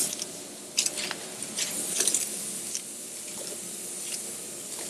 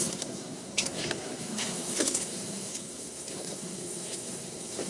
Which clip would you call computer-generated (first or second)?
second